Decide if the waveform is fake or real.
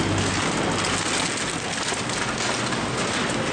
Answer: real